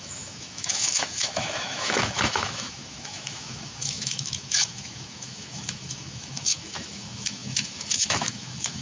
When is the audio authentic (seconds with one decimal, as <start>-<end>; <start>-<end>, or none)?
none